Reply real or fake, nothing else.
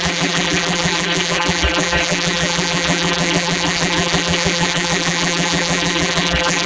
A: fake